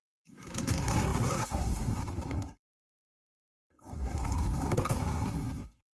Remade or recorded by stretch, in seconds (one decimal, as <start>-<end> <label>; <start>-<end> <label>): 0.0-5.9 remade